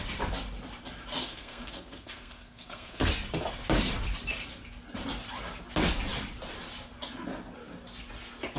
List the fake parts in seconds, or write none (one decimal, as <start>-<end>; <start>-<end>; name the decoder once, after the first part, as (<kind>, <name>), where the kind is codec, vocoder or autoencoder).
1.2-3.1 (codec, SNAC)